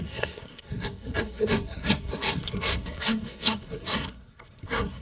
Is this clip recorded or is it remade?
remade